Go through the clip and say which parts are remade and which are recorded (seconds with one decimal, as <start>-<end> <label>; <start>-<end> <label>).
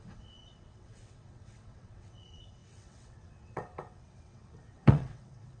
0.0-5.6 remade